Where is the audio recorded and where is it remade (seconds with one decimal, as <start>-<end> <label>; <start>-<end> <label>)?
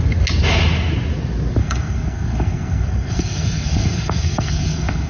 0.0-1.6 recorded; 1.6-5.1 remade